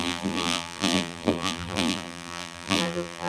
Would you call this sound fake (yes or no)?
yes